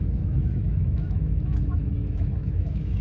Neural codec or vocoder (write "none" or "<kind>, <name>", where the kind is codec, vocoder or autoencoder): autoencoder, DAC-VAE